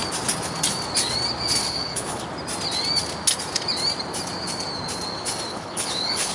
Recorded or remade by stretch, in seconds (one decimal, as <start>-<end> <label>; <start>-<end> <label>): 0.0-1.6 recorded; 1.6-2.2 remade; 2.2-5.5 recorded; 5.5-6.3 remade